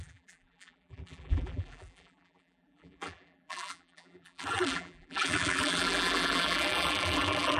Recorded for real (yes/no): no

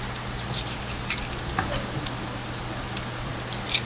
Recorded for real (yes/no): yes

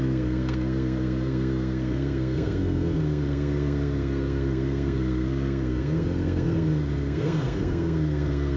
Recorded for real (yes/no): no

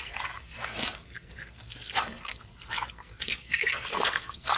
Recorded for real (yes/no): no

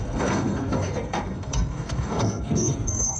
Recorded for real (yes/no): no